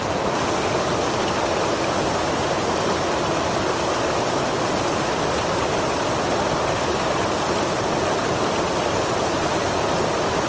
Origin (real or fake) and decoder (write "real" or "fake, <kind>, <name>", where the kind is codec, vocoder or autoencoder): real